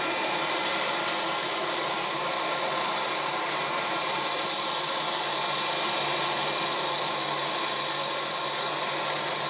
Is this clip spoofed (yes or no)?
no